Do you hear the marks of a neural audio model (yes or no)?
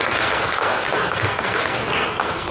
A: yes